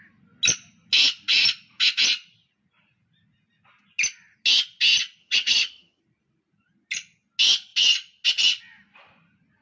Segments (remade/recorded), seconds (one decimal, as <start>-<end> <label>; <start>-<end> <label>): 0.0-5.2 recorded; 5.2-6.0 remade; 6.0-9.6 recorded